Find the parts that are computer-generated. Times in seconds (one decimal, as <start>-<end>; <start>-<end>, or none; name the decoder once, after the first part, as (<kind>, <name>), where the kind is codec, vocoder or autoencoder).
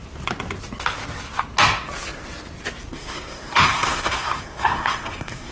2.9-5.5 (codec, SNAC)